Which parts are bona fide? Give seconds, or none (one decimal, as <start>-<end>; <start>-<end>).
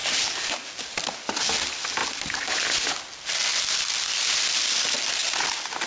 0.0-5.9